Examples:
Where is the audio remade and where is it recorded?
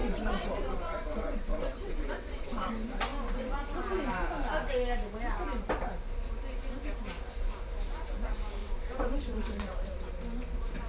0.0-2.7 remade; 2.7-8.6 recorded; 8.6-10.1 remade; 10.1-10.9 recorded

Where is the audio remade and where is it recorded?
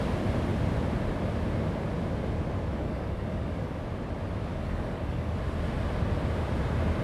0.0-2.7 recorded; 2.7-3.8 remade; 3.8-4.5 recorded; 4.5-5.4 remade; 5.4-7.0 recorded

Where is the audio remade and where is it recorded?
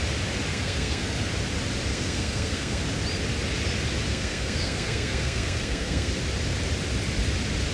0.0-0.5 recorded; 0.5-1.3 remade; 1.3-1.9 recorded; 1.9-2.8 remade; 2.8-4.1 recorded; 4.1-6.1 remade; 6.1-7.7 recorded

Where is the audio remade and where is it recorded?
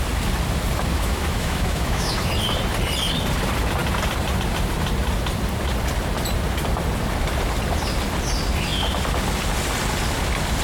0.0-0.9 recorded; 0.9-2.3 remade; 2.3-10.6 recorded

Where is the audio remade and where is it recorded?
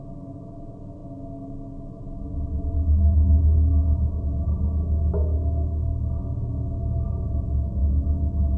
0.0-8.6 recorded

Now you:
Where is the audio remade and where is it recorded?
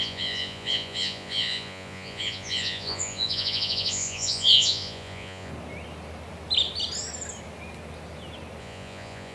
0.0-5.5 remade; 5.5-8.6 recorded; 8.6-9.3 remade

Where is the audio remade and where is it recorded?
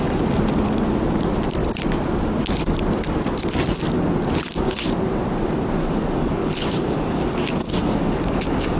0.0-5.8 recorded; 5.8-8.8 remade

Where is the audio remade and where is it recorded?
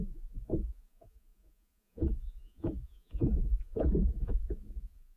0.0-5.2 remade